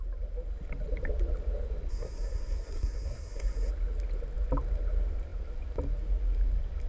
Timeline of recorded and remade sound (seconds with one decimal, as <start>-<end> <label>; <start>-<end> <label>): 0.0-1.9 recorded; 1.9-3.7 remade; 3.7-6.9 recorded

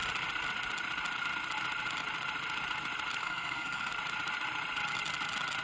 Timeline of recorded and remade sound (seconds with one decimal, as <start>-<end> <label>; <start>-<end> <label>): 0.0-3.2 recorded; 3.2-3.9 remade; 3.9-5.6 recorded

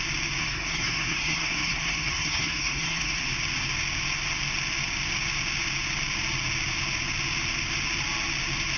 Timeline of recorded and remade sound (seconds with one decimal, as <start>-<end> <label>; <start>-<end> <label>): 0.0-0.4 recorded; 0.4-3.2 remade; 3.2-8.8 recorded